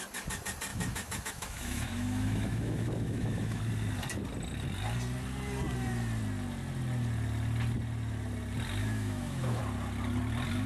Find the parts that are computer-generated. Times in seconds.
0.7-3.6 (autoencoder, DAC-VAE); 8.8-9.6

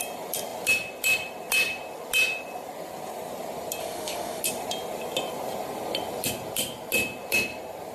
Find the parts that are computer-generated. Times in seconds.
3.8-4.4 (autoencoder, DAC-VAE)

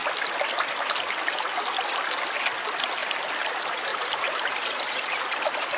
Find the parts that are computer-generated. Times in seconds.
3.0-3.5 (vocoder, BigVGAN v2); 3.9-5.2

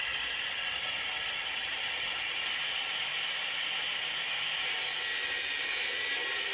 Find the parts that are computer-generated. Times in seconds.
1.6-3.1 (vocoder, BigVGAN v2)